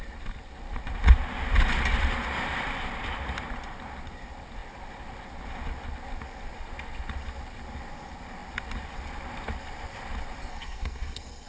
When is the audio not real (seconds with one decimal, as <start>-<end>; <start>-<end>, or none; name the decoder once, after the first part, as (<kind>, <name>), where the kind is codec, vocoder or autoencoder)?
10.5-11.5 (codec, SNAC)

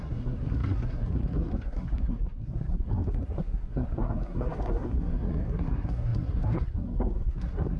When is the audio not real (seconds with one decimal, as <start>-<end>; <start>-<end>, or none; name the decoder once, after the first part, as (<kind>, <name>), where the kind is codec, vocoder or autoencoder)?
0.0-7.8 (codec, SNAC)

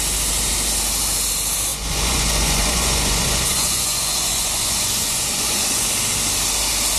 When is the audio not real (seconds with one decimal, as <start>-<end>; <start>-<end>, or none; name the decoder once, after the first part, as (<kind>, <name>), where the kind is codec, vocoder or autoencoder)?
1.7-5.9 (vocoder, Vocos)

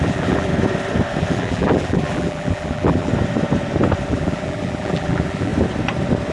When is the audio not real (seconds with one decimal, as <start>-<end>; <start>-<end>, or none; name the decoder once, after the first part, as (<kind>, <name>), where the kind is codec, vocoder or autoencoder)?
0.0-0.5 (vocoder, BigVGAN v2); 1.2-3.1; 4.1-5.5

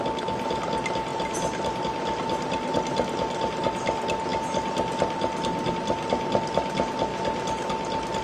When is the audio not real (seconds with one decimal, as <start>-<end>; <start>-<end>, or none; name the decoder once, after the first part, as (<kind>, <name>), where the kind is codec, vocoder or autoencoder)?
none

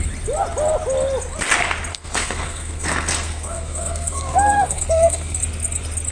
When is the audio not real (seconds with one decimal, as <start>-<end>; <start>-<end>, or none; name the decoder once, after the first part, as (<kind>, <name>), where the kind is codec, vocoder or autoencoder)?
1.9-5.4 (codec, SNAC)

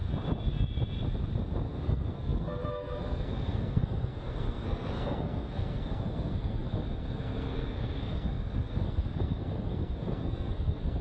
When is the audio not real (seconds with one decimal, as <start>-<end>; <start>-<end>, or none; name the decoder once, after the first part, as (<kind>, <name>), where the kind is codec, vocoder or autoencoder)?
1.7-11.0 (codec, SNAC)